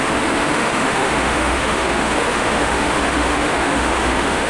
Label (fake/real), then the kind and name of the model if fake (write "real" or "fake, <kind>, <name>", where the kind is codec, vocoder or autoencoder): fake, autoencoder, DAC-VAE